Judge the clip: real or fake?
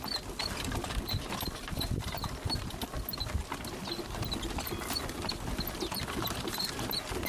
real